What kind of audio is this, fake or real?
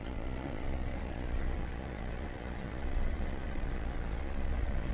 fake